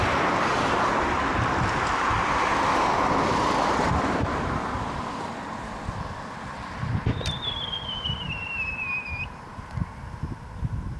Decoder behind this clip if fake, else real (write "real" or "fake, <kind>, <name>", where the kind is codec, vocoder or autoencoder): fake, vocoder, BigVGAN v2